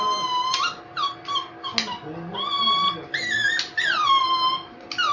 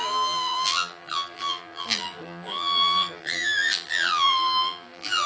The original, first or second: first